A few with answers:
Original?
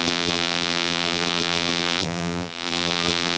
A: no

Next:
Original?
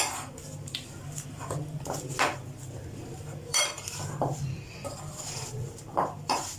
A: no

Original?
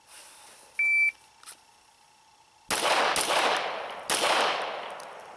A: yes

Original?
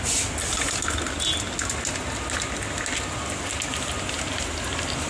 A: yes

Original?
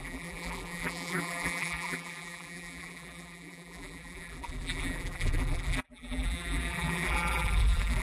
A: no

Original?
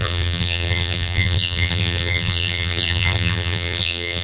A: no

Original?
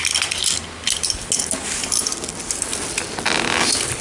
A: yes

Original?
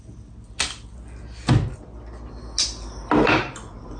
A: yes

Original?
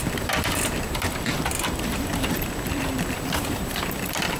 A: no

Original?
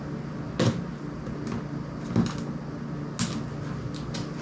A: yes